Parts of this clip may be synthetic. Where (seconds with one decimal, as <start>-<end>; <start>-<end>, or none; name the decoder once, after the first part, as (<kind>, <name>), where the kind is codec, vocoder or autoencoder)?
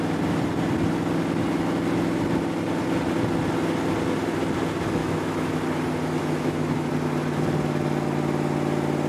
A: 5.0-5.5 (autoencoder, DAC-VAE); 6.2-6.9